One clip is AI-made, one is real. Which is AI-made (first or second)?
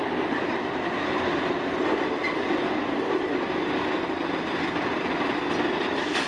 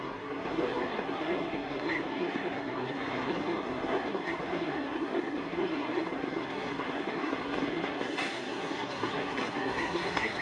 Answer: second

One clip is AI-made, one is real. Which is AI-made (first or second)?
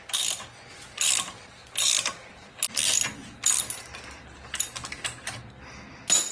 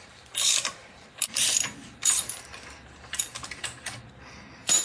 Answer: second